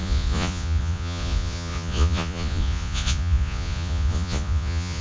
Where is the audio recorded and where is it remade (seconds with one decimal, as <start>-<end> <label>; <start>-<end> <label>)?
0.0-5.0 remade